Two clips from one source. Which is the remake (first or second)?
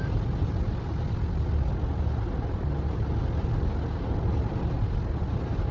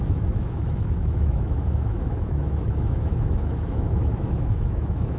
second